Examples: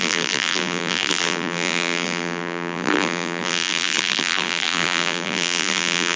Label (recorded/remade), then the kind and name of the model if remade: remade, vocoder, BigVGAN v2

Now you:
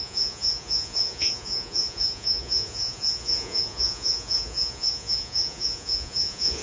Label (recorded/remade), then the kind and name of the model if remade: remade, vocoder, Vocos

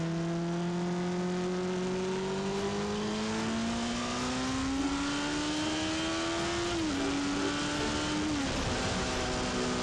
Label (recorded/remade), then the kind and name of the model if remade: recorded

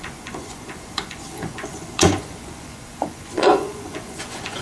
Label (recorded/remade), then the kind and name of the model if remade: remade, vocoder, Vocos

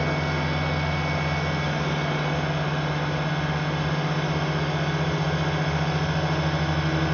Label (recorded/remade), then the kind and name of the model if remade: recorded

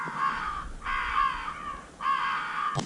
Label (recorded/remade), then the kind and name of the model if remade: recorded